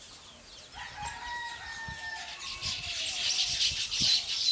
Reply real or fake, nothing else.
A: real